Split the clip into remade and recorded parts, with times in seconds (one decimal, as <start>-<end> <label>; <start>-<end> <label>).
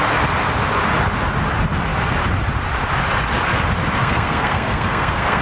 0.0-4.0 recorded; 4.0-5.4 remade